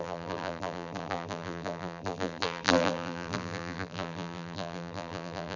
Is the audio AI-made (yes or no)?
yes